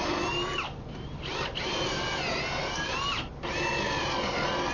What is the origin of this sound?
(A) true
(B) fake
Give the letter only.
A